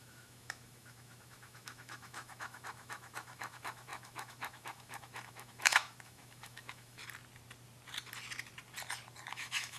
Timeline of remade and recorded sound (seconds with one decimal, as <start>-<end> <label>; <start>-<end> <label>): 0.0-7.0 remade; 7.0-9.3 recorded; 9.3-9.8 remade